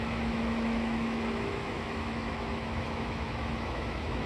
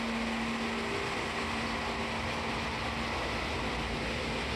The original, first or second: second